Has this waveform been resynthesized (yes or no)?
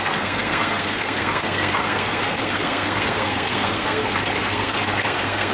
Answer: yes